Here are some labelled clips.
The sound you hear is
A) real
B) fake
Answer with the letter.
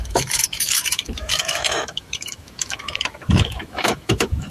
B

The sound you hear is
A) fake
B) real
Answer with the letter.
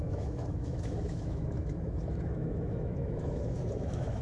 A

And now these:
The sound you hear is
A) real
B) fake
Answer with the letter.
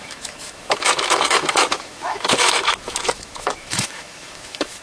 B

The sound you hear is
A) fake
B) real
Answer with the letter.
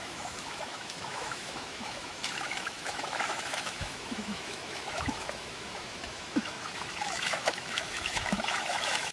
A